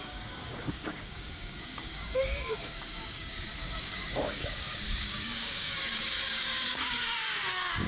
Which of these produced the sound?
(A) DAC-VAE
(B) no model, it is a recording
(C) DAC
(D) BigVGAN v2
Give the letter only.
C